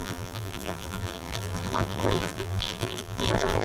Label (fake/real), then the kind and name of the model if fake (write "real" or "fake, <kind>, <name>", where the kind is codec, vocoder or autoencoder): fake, vocoder, BigVGAN v2